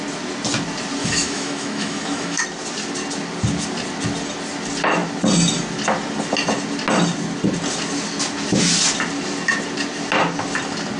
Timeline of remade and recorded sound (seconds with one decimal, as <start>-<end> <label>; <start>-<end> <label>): 0.0-1.0 recorded; 1.0-2.4 remade; 2.4-11.0 recorded